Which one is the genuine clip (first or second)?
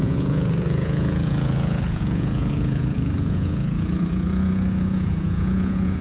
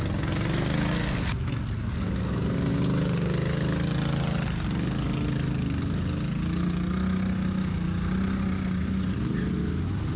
second